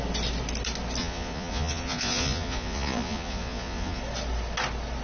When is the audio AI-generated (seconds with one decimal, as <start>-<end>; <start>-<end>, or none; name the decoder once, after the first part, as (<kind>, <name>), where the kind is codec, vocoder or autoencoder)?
1.0-4.0 (vocoder, Vocos)